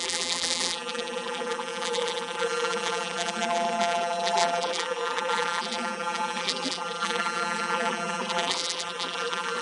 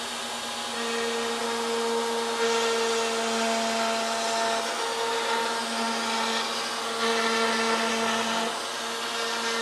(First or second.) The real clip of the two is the second